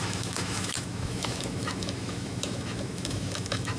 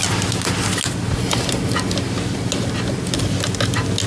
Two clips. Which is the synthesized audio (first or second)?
first